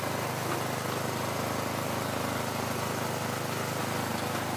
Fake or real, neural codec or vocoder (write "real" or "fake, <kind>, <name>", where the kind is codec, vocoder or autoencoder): real